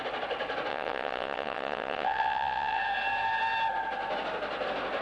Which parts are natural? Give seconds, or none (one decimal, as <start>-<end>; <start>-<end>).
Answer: 0.0-0.7; 2.8-5.0